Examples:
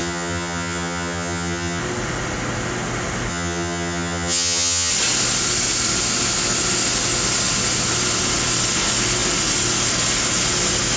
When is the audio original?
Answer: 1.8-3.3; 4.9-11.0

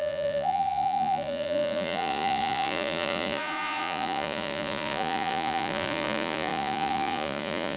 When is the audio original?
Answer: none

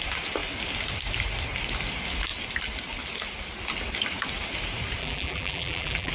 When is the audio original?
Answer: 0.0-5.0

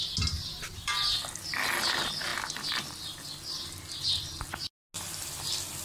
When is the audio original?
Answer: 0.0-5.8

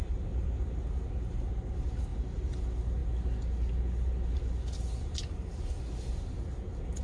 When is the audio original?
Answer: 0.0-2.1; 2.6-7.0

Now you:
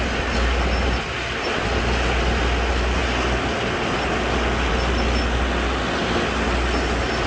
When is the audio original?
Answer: 0.0-7.3

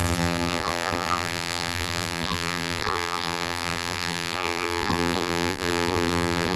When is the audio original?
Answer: none

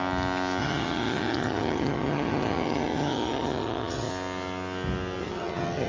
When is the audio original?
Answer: 0.0-0.6; 4.1-5.2